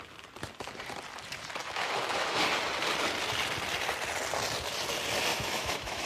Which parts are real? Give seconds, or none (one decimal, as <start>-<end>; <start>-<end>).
0.0-1.6; 2.4-5.3